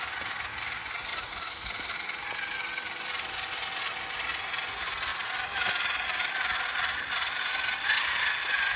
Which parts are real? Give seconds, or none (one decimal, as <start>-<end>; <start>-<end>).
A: 0.0-1.1; 1.9-5.1; 6.3-8.8